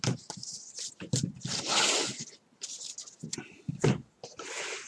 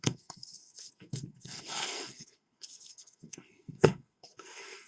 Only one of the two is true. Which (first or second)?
first